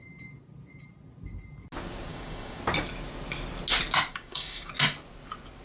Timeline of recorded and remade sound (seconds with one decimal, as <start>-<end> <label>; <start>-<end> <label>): 0.0-2.1 recorded; 2.1-2.6 remade; 2.6-4.1 recorded; 4.1-4.7 remade; 4.7-5.6 recorded